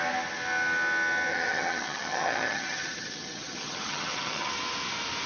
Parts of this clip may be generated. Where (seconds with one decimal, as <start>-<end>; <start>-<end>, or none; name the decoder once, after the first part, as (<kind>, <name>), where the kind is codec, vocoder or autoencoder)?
1.3-4.5 (vocoder, HiFi-GAN)